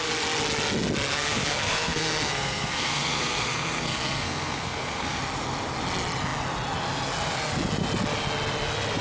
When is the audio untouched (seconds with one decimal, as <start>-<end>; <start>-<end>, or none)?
0.0-1.1; 5.2-9.0